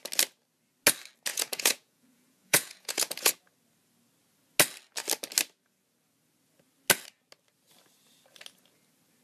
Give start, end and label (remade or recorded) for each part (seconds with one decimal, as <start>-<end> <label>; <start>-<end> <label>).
0.0-1.3 recorded; 1.3-3.3 remade; 3.3-9.2 recorded